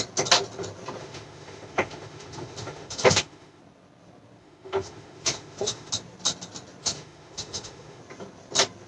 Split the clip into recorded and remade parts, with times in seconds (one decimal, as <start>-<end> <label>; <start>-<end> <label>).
0.0-1.0 recorded; 1.0-3.6 remade; 3.6-4.4 recorded; 4.4-5.9 remade; 5.9-6.8 recorded; 6.8-8.0 remade; 8.0-8.9 recorded